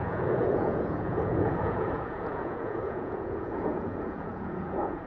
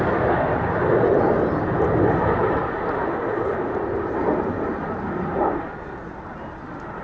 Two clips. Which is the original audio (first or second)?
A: second